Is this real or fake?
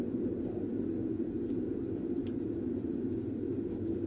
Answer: real